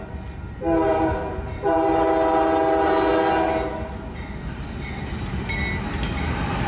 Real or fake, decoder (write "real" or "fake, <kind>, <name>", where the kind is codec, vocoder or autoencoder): real